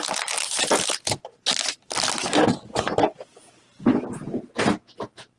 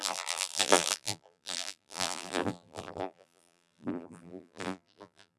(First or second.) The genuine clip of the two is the first